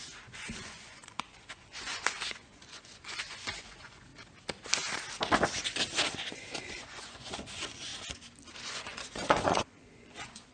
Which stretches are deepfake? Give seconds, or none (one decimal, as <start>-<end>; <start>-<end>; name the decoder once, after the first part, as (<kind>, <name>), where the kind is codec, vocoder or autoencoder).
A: 0.0-4.1 (vocoder, Vocos); 6.1-7.9; 8.6-10.5

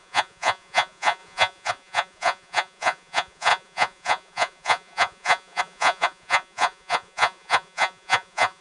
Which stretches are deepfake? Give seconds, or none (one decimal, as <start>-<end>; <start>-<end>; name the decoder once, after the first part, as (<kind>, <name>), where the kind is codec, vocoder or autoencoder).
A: 0.0-8.6 (vocoder, Vocos)

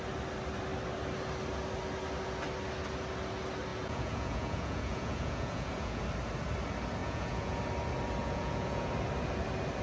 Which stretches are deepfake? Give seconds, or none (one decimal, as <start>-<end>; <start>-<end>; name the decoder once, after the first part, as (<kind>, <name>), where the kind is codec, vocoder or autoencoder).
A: 3.7-6.0 (vocoder, Vocos); 7.0-7.6; 8.2-8.9

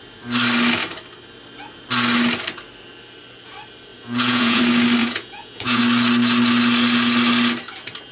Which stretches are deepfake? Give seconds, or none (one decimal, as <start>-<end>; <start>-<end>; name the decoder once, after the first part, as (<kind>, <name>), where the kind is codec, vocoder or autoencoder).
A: 3.9-4.6 (vocoder, Vocos); 5.0-5.8

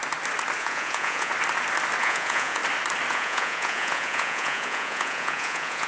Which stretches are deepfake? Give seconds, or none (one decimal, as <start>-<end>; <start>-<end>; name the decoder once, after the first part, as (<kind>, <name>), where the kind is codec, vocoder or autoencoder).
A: 0.6-1.3 (vocoder, Vocos); 2.0-2.6; 3.1-5.9

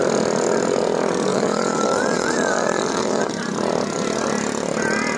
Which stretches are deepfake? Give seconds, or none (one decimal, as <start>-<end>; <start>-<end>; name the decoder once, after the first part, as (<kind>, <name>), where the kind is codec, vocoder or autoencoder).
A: 1.3-3.3 (vocoder, Vocos)